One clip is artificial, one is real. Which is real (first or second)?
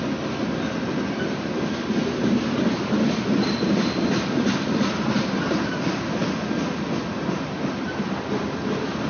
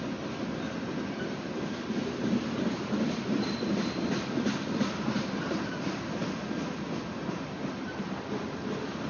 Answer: first